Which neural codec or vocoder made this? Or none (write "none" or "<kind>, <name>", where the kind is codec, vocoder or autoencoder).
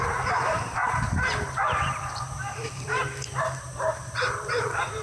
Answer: vocoder, BigVGAN v2